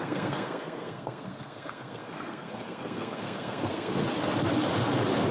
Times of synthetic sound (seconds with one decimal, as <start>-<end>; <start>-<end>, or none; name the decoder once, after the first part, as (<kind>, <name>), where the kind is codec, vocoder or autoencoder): 0.0-4.0 (codec, SNAC)